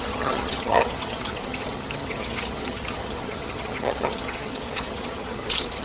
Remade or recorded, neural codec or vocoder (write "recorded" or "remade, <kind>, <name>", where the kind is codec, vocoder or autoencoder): remade, vocoder, HiFi-GAN